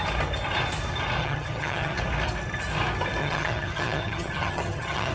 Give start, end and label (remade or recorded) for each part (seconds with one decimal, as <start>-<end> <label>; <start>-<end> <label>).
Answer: 0.0-1.2 recorded; 1.2-2.0 remade; 2.0-3.2 recorded; 3.2-5.1 remade